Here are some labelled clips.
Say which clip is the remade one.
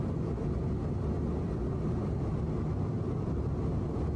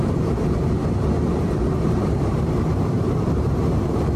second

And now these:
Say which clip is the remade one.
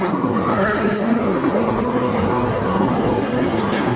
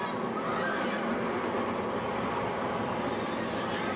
first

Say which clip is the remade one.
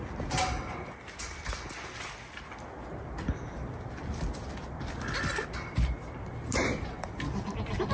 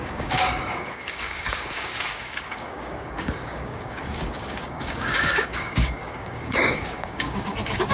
second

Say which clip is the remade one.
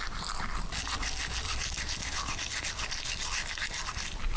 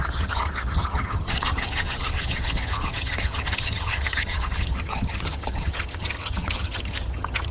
second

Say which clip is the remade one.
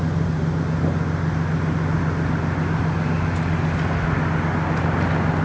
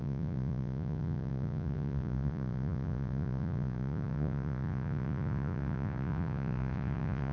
second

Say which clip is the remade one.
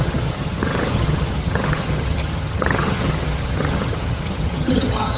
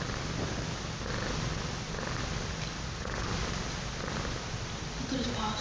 first